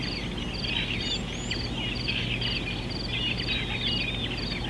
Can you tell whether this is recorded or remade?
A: recorded